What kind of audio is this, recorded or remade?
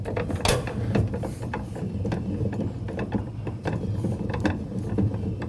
recorded